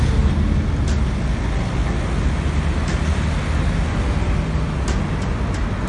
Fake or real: real